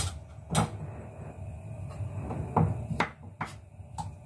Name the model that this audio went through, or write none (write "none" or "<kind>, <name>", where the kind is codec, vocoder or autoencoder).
none